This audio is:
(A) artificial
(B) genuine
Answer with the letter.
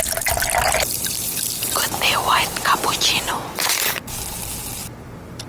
B